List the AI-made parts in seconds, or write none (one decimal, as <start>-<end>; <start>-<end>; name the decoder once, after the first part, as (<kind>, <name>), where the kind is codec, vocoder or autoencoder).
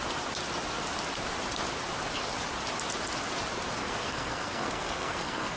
3.8-5.6 (codec, SNAC)